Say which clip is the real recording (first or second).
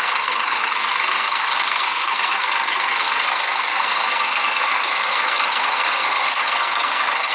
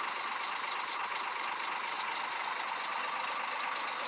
second